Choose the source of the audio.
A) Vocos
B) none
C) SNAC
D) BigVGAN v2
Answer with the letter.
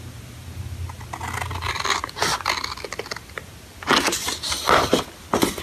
B